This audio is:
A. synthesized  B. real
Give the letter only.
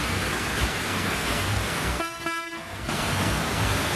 A